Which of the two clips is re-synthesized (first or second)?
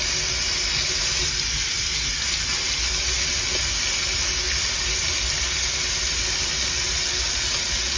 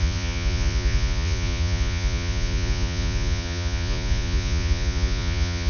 second